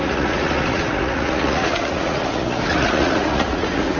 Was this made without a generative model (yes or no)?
no